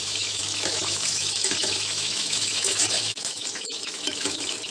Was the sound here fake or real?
fake